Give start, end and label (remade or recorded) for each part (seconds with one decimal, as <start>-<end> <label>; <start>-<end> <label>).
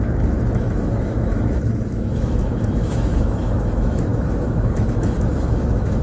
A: 0.0-6.0 remade